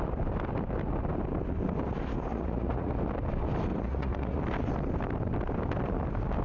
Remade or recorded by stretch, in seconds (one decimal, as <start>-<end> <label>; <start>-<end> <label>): 0.0-2.3 recorded; 2.3-2.9 remade; 2.9-3.7 recorded; 3.7-4.4 remade; 4.4-6.4 recorded